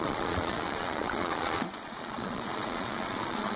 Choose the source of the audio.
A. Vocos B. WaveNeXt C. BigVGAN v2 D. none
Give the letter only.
A